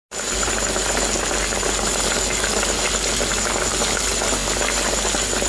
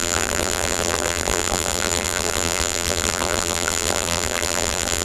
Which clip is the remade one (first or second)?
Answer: second